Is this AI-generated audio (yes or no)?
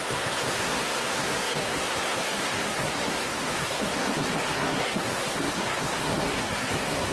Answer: yes